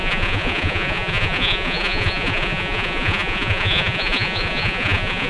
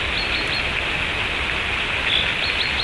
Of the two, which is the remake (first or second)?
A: first